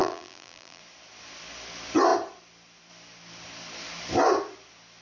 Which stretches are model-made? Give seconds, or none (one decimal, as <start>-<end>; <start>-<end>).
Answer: 0.0-0.8

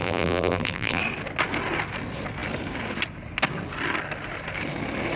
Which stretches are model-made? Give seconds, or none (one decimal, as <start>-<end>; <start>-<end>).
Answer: 0.0-1.0

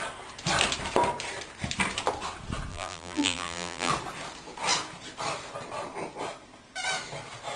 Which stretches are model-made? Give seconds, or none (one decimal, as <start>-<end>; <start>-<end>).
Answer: 2.7-3.9

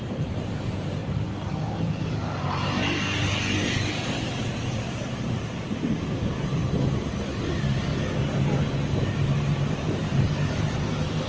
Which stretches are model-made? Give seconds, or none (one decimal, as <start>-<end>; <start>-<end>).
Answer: 0.0-6.6; 7.5-7.9; 8.6-11.3

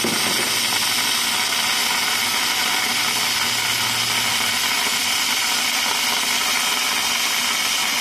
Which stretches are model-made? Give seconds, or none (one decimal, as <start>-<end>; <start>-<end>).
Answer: 5.0-5.9

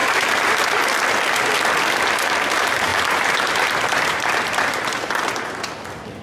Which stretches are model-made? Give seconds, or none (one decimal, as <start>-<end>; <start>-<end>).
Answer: 0.0-0.8; 2.9-5.1

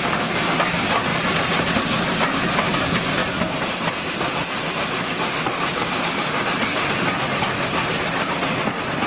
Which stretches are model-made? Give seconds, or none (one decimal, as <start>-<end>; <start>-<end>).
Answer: 1.1-1.7